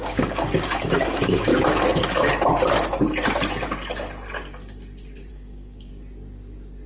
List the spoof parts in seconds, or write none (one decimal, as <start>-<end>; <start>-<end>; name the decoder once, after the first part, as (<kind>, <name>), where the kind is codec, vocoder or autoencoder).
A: 0.0-1.5 (codec, DAC); 5.3-5.9